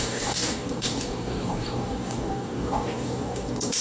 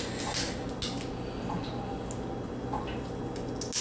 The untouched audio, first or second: second